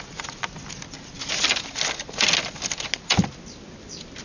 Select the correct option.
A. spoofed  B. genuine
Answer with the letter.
B